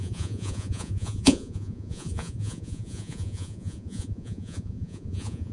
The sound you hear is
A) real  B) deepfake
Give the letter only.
B